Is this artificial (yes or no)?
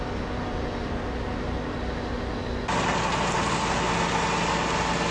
no